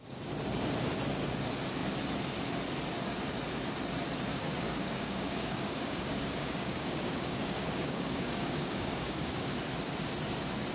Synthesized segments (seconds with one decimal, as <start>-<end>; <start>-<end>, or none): 4.3-9.6